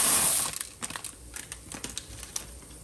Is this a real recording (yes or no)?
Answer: yes